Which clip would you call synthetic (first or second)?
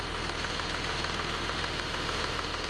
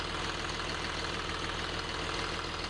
first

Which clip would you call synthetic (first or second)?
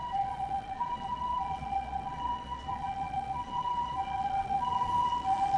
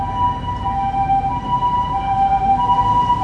first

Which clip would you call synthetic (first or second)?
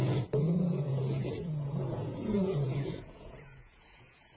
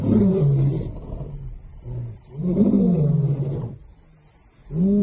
first